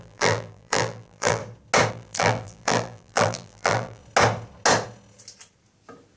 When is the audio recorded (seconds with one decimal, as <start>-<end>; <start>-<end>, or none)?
1.4-1.9; 4.0-6.2